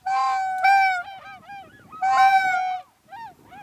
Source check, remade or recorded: recorded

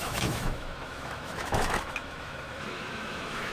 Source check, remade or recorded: remade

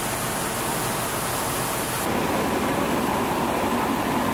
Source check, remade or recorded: recorded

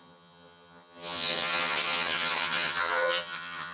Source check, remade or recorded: remade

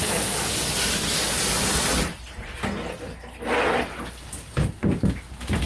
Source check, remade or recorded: recorded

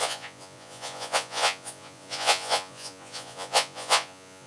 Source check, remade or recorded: remade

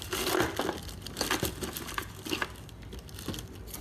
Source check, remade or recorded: recorded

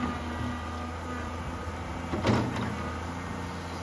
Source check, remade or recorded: recorded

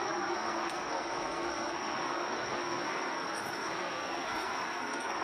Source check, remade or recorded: remade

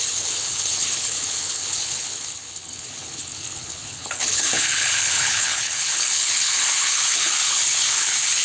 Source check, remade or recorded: remade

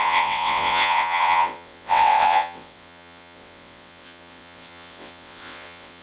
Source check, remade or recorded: remade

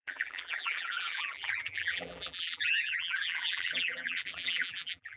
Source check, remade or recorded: remade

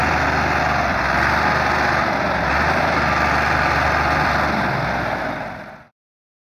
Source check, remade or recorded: recorded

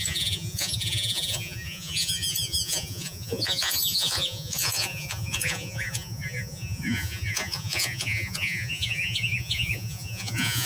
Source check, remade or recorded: remade